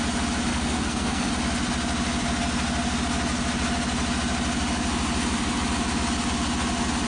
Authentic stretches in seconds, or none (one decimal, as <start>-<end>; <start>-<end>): 0.0-0.5; 1.3-7.1